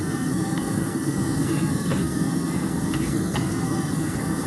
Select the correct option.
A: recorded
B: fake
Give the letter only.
B